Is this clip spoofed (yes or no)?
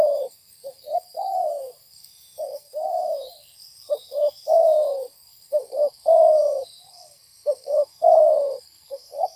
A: yes